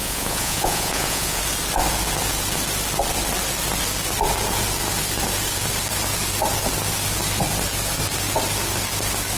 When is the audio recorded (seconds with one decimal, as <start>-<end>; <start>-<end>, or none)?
1.4-9.4